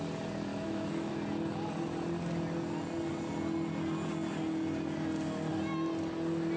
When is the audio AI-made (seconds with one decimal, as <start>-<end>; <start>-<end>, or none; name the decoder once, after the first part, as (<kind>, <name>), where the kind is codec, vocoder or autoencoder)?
0.5-1.1 (autoencoder, DAC-VAE)